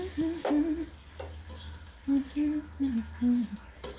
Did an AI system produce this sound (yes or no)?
no